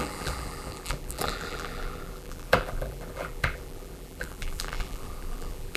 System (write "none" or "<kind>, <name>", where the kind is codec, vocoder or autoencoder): vocoder, BigVGAN v2